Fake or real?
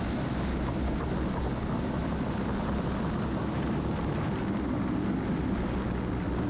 real